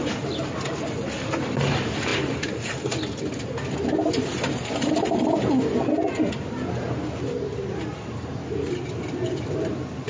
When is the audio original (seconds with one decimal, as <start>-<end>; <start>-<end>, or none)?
0.0-10.1